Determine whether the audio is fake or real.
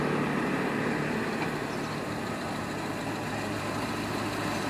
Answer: real